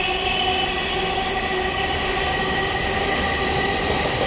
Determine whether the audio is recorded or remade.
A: recorded